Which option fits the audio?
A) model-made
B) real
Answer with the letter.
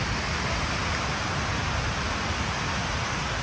B